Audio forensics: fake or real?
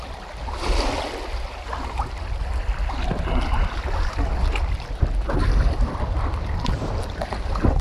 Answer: real